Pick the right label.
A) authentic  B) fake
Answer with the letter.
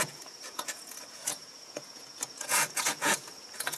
B